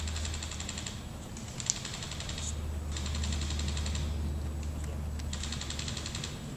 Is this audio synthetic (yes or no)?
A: no